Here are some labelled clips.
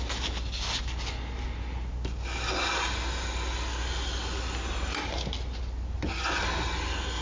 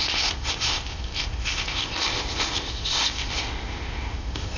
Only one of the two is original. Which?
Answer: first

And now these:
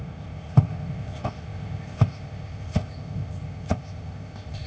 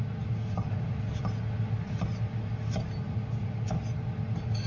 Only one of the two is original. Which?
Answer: second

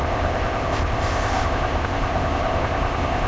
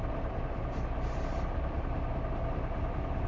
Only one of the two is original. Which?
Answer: second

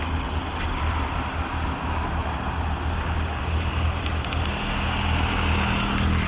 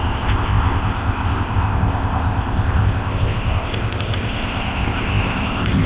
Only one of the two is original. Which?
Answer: first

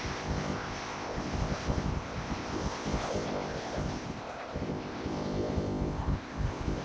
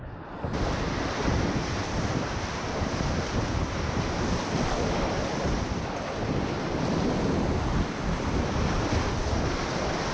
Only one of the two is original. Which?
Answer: second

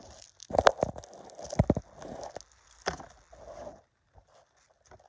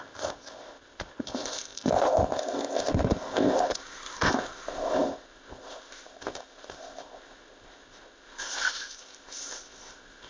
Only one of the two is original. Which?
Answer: first